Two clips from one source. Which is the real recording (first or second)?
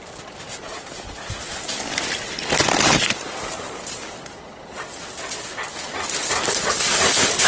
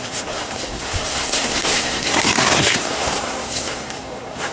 first